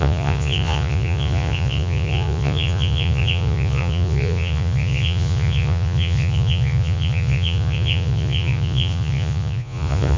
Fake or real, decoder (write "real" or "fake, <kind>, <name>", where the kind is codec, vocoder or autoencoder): fake, vocoder, Vocos